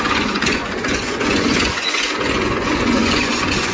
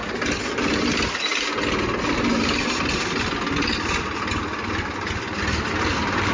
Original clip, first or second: second